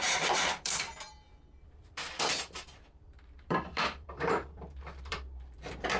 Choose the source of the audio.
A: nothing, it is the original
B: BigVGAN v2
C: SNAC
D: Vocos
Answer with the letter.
B